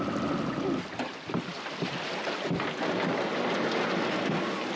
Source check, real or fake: real